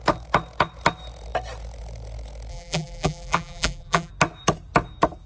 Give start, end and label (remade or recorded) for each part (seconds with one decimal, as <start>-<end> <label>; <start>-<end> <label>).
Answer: 0.0-2.5 recorded; 2.5-4.1 remade; 4.1-5.3 recorded